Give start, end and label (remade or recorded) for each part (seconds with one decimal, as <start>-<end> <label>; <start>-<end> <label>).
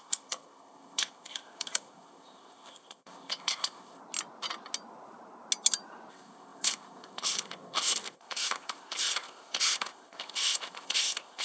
0.0-4.0 remade; 4.0-6.1 recorded; 6.1-11.4 remade